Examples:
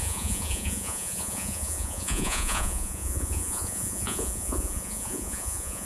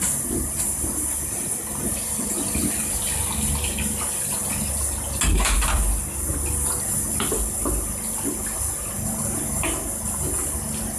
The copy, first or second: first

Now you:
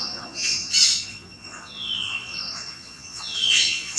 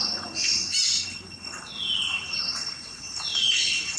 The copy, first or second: first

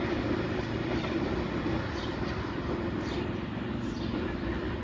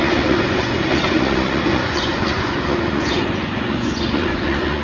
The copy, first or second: second